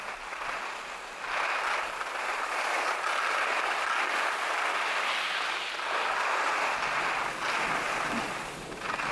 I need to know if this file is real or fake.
real